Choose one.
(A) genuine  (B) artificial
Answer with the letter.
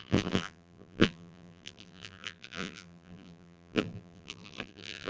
B